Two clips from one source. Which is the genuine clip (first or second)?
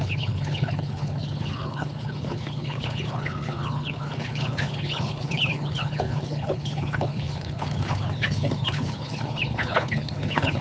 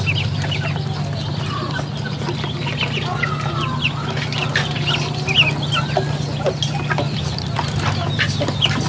second